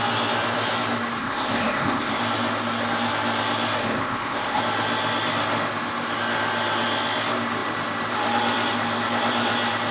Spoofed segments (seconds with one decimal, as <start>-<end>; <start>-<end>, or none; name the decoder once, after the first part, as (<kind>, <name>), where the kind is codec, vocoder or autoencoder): 1.2-2.2 (codec, ZipCodec); 3.8-4.6